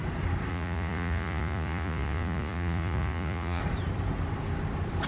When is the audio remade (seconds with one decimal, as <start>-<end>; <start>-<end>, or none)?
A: 0.5-3.6